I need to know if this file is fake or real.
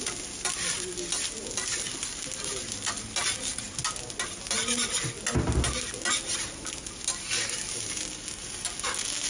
real